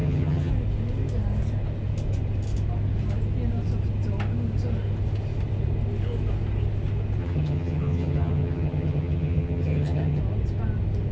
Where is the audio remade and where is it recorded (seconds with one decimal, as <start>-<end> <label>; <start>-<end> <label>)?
0.0-0.5 remade; 0.5-7.2 recorded; 7.2-10.2 remade; 10.2-11.1 recorded